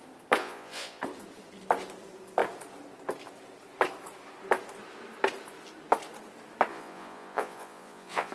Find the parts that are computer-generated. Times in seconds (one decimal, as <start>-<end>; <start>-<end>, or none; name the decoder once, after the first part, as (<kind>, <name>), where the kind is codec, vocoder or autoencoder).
0.4-1.0 (vocoder, Vocos); 6.7-8.3